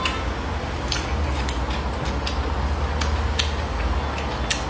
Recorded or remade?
recorded